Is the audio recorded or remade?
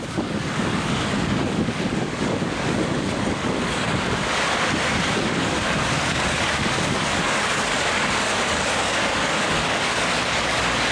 remade